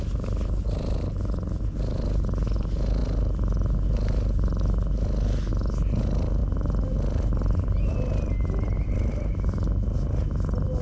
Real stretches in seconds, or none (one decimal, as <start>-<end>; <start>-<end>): 0.0-10.8